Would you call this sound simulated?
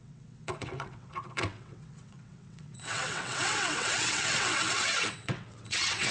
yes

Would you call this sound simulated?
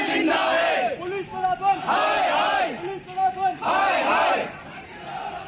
no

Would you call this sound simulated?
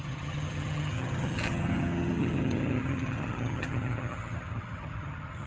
yes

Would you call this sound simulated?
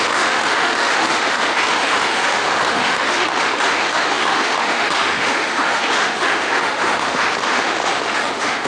yes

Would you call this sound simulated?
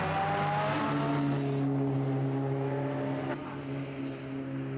no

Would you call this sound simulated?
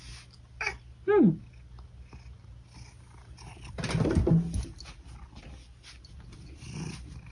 no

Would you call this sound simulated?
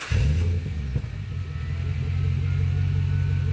no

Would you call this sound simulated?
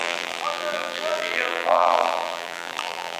yes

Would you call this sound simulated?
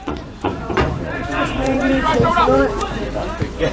yes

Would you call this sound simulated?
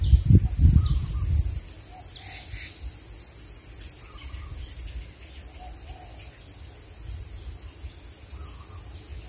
no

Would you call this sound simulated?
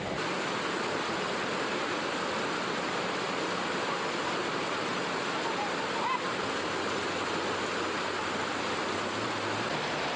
no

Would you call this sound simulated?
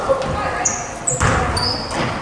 no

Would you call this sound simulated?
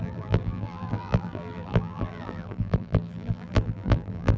yes